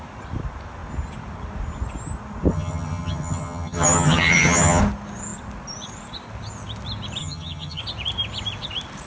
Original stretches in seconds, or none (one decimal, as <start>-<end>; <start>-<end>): 0.0-2.5; 4.8-7.2; 7.8-9.1